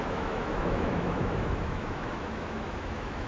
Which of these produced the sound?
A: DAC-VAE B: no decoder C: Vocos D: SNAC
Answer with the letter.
A